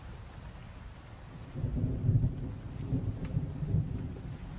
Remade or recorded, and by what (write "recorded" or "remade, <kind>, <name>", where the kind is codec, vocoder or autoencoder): recorded